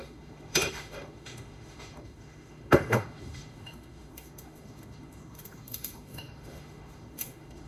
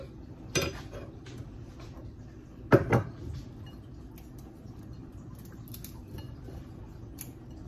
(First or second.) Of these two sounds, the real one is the second